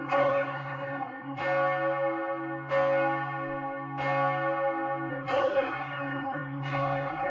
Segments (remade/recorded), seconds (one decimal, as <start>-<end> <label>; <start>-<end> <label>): 0.0-1.4 remade; 1.4-5.1 recorded; 5.1-7.3 remade